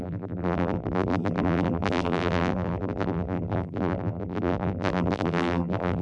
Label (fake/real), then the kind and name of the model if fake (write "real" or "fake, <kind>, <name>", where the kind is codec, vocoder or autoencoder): fake, vocoder, BigVGAN v2